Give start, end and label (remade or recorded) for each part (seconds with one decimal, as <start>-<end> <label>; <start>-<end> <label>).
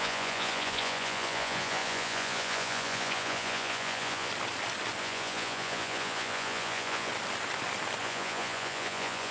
0.0-4.3 remade; 4.3-5.0 recorded; 5.0-7.1 remade; 7.1-8.0 recorded; 8.0-9.3 remade